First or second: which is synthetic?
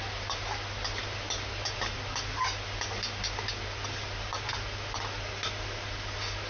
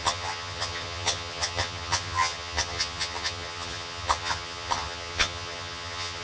second